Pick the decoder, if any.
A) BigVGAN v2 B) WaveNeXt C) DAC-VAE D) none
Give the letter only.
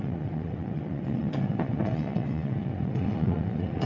B